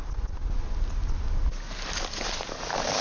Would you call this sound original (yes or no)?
yes